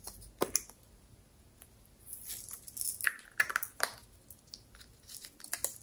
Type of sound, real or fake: real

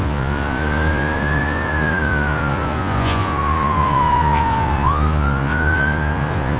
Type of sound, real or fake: fake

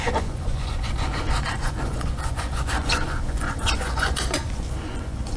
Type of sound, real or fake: fake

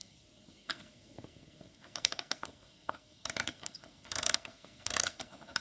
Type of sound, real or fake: fake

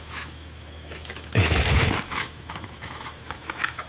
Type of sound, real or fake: fake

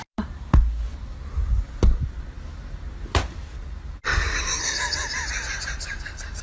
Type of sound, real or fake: real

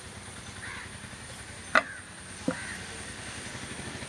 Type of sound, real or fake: real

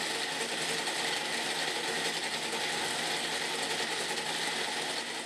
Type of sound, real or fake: real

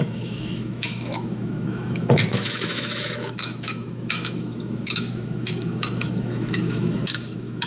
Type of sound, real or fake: fake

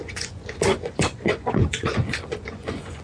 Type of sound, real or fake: fake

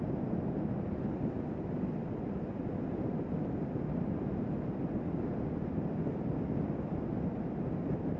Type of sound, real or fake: real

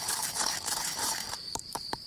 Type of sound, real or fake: fake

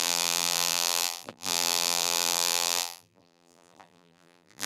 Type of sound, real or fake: fake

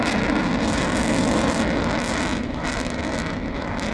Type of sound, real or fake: real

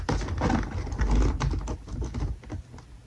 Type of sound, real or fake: real